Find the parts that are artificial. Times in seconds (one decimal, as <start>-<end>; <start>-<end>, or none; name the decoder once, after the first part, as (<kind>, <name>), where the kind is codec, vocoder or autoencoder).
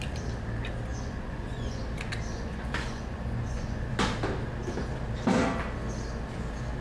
0.9-1.8 (vocoder, Vocos); 2.3-3.9